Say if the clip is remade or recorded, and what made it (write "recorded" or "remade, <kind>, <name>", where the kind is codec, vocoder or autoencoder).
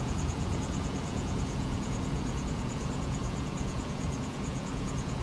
remade, vocoder, Vocos